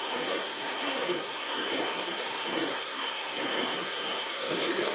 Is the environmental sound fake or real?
fake